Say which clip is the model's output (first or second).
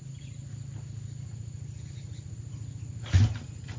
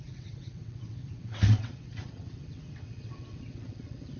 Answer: second